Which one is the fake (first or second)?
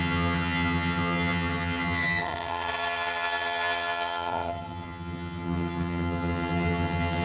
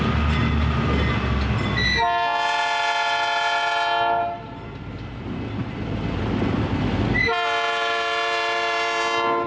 first